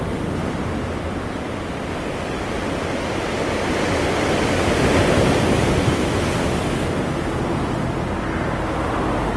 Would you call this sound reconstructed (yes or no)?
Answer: no